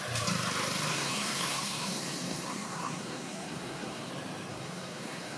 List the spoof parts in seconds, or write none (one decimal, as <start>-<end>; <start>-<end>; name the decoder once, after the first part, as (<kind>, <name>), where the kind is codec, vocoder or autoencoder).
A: 0.9-4.1 (codec, SNAC); 4.5-5.4